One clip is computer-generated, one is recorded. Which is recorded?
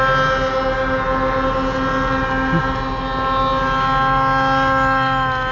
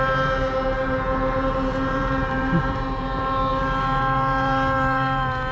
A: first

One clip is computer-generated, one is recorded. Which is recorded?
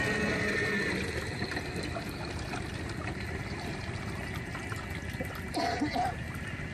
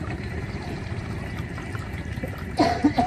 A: first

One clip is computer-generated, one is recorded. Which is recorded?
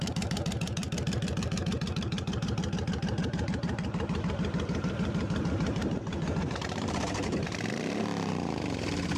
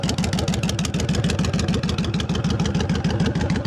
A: second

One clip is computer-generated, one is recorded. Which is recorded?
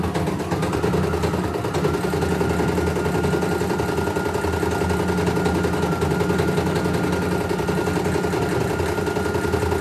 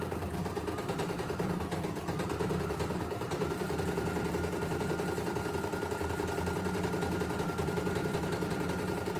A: first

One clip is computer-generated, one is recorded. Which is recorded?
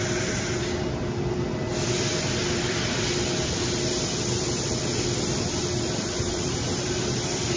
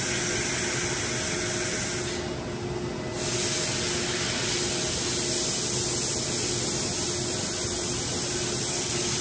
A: second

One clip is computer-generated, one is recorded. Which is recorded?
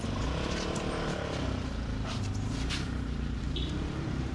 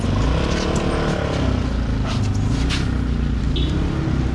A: second